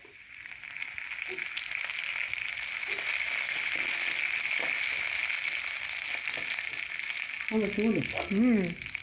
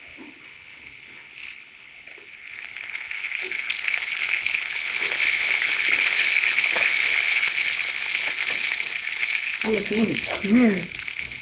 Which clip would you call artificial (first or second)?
second